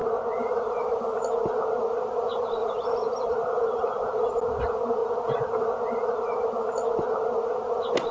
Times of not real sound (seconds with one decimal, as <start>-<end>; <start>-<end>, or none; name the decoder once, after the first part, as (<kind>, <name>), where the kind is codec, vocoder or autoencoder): 0.0-1.2 (vocoder, BigVGAN v2); 2.6-3.3